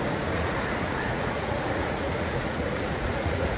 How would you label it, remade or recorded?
remade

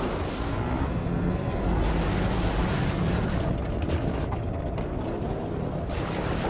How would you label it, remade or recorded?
recorded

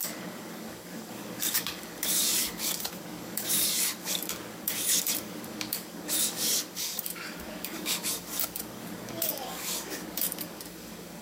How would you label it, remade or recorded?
remade